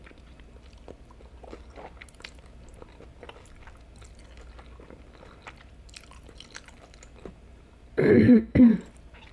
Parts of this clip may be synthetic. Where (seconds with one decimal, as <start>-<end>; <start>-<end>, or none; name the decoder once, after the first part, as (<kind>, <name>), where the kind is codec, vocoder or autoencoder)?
8.1-8.7 (codec, SNAC)